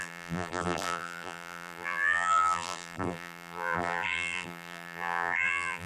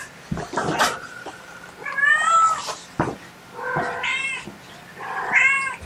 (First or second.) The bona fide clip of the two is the second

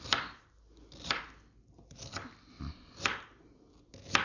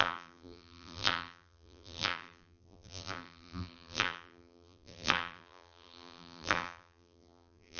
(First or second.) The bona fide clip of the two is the first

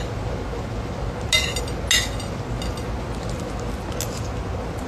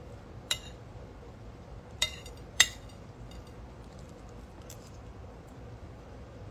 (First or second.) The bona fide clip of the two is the first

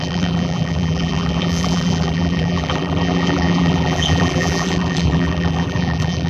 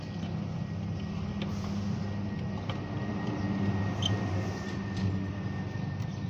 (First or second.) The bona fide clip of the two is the second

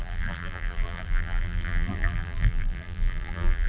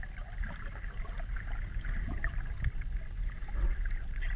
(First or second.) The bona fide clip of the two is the second